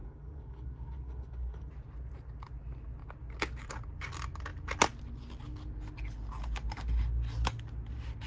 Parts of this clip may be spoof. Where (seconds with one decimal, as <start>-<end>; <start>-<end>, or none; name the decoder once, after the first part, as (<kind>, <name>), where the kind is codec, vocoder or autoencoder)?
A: 0.0-1.7 (codec, SNAC)